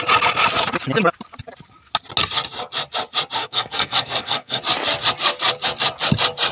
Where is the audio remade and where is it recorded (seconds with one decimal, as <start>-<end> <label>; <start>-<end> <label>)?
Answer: 0.0-3.4 recorded; 3.4-4.6 remade; 4.6-6.5 recorded